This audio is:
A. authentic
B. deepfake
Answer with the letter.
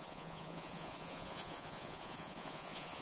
B